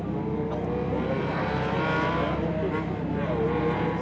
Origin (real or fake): real